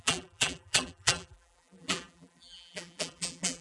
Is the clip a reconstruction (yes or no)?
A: yes